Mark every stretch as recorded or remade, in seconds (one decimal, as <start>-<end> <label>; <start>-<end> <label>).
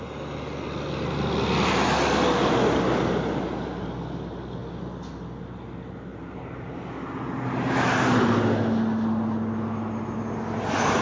0.0-11.0 recorded